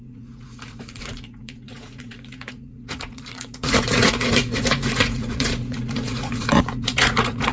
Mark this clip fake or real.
fake